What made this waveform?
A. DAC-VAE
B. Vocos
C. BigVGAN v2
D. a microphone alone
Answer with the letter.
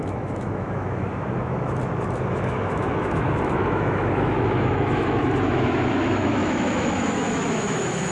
A